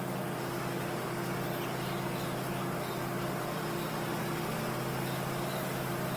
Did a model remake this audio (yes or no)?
no